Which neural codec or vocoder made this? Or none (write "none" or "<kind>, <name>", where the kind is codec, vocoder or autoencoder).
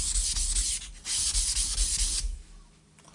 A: none